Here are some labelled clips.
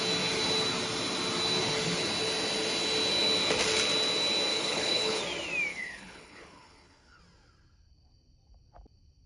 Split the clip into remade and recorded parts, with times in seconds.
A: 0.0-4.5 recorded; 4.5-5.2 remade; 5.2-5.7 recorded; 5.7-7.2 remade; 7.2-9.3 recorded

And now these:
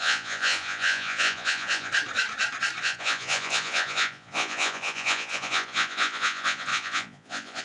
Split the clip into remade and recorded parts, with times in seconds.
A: 0.0-1.9 remade; 1.9-2.8 recorded; 2.8-7.6 remade

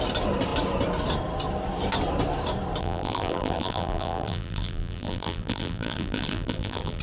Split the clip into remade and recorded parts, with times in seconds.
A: 0.0-2.8 recorded; 2.8-7.0 remade

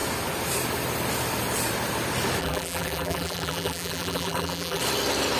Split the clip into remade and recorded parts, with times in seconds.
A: 0.0-2.4 recorded; 2.4-4.8 remade; 4.8-5.4 recorded

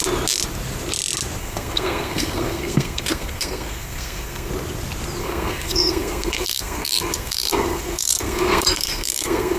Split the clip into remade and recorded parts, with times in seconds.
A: 0.0-1.4 recorded; 1.4-4.5 remade; 4.5-5.2 recorded; 5.2-9.6 remade

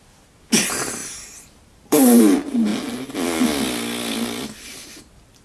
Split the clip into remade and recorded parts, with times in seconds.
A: 0.0-1.0 recorded; 1.0-2.2 remade; 2.2-5.4 recorded

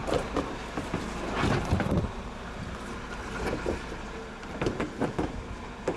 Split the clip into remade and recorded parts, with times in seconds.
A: 0.0-6.0 recorded